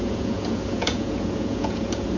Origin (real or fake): fake